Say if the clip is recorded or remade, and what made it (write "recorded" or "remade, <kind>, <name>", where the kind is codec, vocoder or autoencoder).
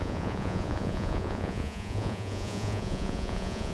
remade, vocoder, Vocos